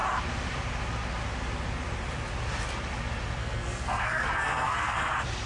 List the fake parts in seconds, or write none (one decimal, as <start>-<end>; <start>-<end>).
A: 3.4-5.1